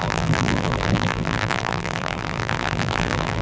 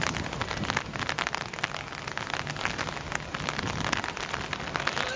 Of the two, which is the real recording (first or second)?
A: second